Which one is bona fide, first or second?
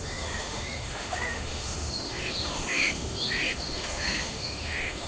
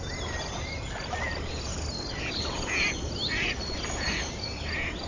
second